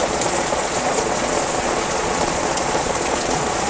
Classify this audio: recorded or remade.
remade